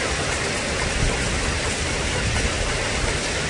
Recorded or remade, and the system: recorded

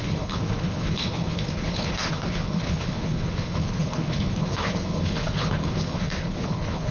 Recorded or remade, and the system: remade, codec, HILCodec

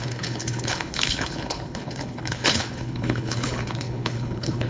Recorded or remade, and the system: remade, codec, HILCodec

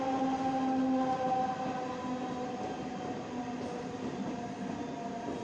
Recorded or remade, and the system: recorded